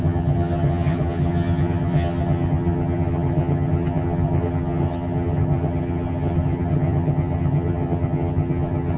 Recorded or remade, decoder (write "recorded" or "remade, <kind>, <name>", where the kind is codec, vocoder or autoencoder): remade, vocoder, HiFi-GAN